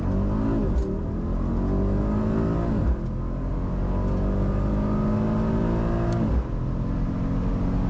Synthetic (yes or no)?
no